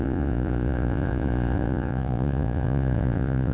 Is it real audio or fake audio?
fake